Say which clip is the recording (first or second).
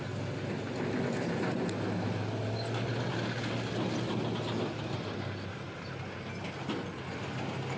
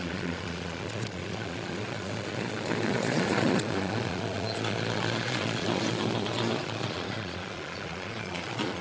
first